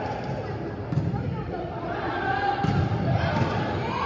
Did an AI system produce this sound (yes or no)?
no